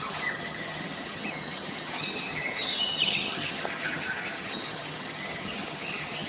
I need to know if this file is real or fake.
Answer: fake